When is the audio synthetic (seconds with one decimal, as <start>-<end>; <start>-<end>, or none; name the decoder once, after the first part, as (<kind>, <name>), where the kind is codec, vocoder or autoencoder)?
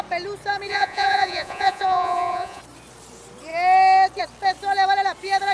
0.7-2.6 (vocoder, Vocos)